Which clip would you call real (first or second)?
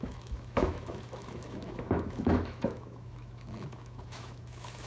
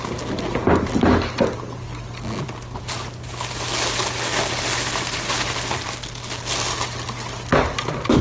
second